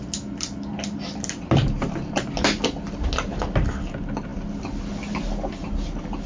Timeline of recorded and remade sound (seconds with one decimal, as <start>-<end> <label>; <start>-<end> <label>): 0.0-6.3 recorded